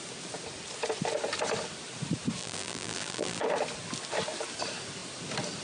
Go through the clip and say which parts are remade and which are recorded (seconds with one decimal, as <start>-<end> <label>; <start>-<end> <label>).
0.0-2.4 recorded; 2.4-3.4 remade; 3.4-5.6 recorded